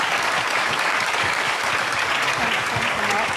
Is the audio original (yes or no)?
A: no